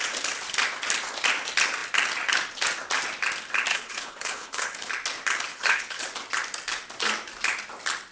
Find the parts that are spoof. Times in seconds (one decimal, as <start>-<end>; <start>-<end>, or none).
3.7-4.9; 5.5-6.0